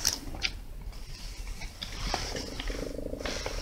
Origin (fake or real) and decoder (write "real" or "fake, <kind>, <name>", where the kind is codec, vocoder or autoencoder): real